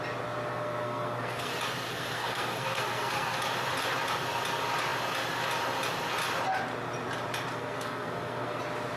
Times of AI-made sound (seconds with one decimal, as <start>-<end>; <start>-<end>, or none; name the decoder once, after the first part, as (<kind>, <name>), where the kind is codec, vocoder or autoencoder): 0.5-1.5 (codec, SNAC); 1.9-3.4; 7.5-8.6